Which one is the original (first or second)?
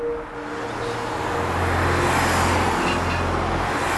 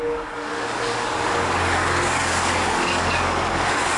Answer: first